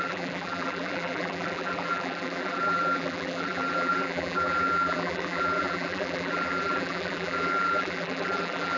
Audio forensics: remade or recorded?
remade